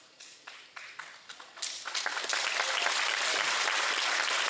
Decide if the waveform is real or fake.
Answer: real